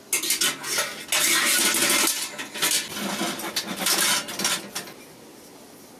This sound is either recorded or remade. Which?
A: recorded